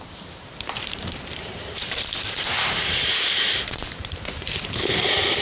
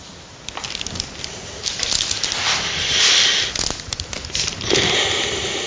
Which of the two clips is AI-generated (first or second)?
first